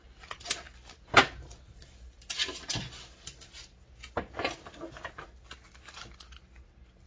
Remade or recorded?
recorded